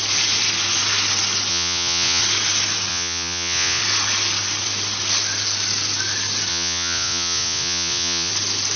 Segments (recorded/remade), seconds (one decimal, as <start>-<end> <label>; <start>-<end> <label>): 0.0-1.5 recorded; 1.5-2.2 remade; 2.2-2.9 recorded; 2.9-3.8 remade; 3.8-6.5 recorded; 6.5-8.3 remade; 8.3-8.8 recorded